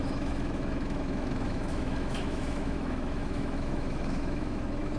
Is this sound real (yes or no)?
no